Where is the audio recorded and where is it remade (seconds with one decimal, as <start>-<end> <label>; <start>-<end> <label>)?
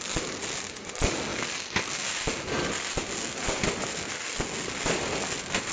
0.0-5.7 recorded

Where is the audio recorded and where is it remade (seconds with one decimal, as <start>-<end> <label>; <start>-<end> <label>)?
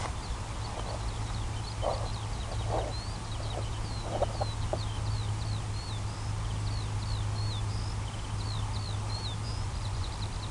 0.0-9.4 recorded; 9.4-10.1 remade; 10.1-10.5 recorded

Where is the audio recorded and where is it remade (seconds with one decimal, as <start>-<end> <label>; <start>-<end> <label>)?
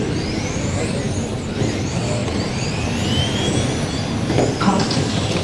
0.0-5.4 recorded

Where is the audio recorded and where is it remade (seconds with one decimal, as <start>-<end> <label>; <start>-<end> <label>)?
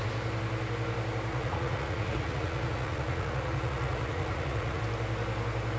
0.0-1.3 recorded; 1.3-4.8 remade; 4.8-5.8 recorded